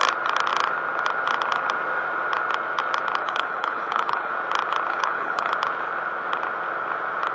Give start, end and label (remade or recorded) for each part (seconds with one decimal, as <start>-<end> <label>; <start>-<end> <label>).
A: 0.0-3.2 recorded; 3.2-4.3 remade; 4.3-4.9 recorded; 4.9-5.5 remade; 5.5-7.3 recorded